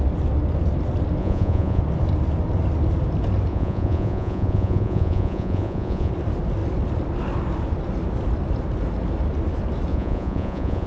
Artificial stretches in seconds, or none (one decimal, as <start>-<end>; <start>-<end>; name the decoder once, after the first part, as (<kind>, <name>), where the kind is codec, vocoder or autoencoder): 1.2-1.8 (vocoder, Vocos); 3.5-6.1; 9.9-10.9